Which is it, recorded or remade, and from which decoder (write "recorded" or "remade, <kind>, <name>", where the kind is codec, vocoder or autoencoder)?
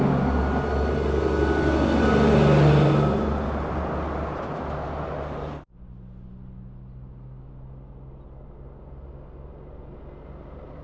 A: recorded